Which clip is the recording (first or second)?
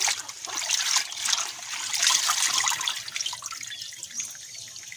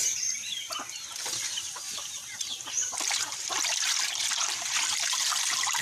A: first